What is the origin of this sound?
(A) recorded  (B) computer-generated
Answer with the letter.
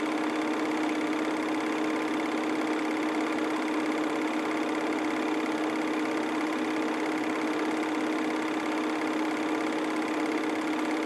A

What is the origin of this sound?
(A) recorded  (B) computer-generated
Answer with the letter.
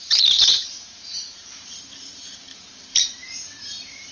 B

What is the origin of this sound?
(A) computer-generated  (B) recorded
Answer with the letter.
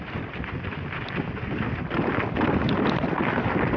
A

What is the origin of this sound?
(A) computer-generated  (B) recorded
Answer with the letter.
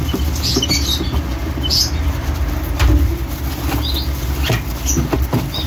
B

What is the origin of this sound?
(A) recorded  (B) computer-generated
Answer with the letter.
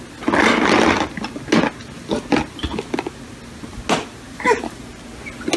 A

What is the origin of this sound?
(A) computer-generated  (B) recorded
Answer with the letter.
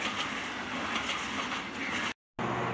B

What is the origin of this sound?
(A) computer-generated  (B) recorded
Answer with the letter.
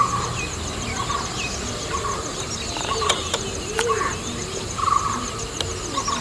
B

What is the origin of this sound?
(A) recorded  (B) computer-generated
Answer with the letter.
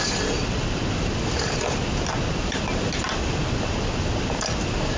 A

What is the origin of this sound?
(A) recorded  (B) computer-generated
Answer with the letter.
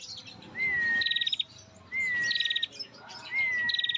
A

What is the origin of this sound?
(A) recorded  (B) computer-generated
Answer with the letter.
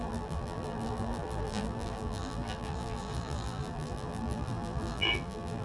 B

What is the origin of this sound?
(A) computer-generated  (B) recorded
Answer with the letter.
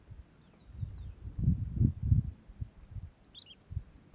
B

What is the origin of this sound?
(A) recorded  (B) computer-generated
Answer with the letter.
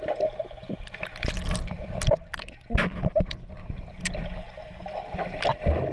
A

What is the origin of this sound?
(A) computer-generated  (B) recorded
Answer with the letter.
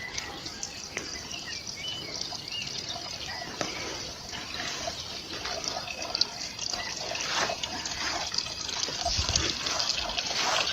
B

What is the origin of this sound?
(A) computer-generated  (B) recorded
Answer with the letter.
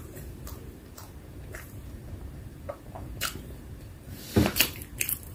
A